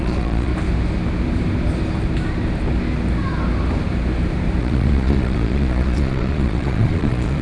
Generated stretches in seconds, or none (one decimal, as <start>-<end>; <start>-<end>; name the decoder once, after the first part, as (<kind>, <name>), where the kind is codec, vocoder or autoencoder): 0.0-0.5 (vocoder, Vocos); 4.6-7.4